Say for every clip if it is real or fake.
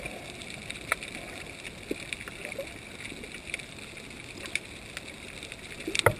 real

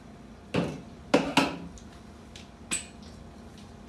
real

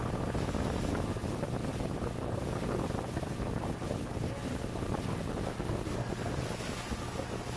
real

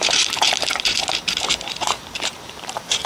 fake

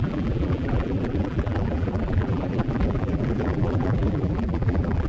fake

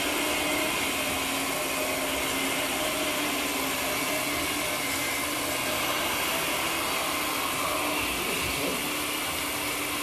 real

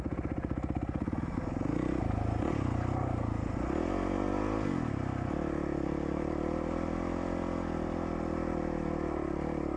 real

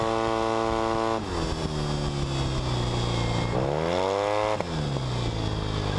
real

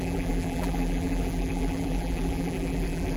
fake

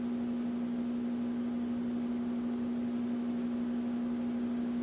real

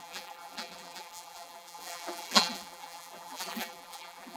fake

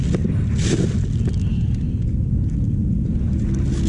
real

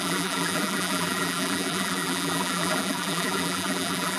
fake